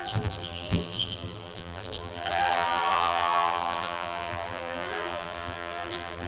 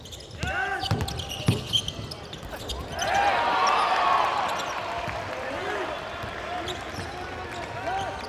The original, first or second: second